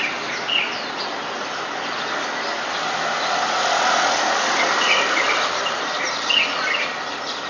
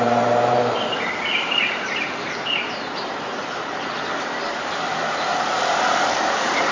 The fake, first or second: second